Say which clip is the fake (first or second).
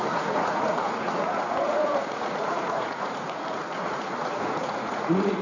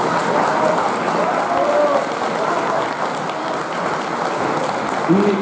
first